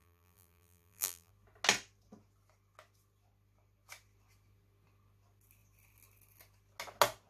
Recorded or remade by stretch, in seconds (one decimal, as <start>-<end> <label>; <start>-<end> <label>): 0.0-1.3 remade; 1.3-7.3 recorded